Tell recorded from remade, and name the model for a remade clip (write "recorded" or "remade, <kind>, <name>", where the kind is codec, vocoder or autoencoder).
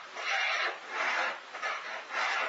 recorded